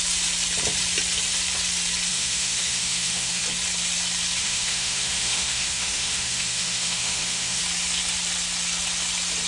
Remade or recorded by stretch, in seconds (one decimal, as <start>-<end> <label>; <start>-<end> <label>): 0.0-2.1 recorded; 2.1-3.4 remade; 3.4-4.4 recorded; 4.4-7.6 remade; 7.6-9.5 recorded